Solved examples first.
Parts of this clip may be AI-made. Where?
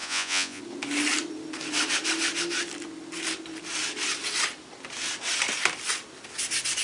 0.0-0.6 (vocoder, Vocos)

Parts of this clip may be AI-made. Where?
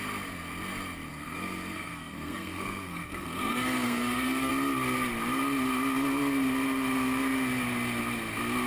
1.1-4.5 (codec, SNAC)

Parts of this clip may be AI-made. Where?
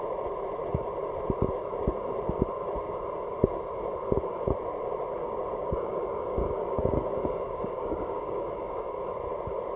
5.2-9.0 (codec, DAC)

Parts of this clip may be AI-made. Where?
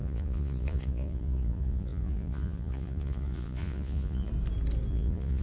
0.0-4.3 (vocoder, Vocos); 4.9-5.4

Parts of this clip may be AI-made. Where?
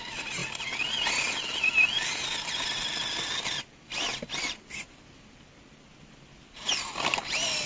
none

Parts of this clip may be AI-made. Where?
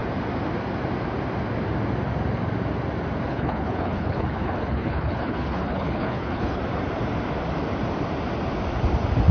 3.3-6.6 (codec, HILCodec)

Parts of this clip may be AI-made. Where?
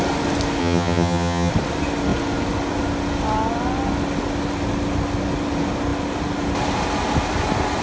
0.6-1.5 (vocoder, HiFi-GAN)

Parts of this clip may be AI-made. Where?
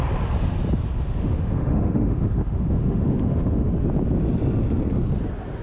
1.2-3.7 (autoencoder, DAC-VAE)